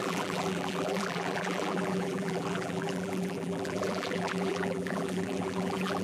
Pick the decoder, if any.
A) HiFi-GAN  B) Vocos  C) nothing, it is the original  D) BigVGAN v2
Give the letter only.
D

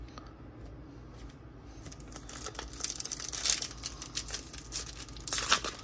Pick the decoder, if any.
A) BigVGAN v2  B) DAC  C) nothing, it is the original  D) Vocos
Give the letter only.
C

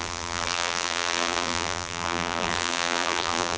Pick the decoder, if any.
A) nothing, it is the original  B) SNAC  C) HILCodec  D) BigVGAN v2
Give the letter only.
D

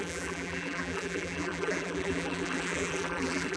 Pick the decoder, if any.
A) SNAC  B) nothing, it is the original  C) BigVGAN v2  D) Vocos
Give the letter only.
C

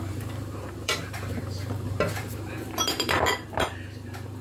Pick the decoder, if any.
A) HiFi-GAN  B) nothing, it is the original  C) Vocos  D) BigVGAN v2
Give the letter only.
D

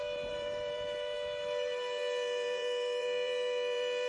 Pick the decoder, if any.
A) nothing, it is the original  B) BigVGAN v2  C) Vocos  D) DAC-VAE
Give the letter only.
B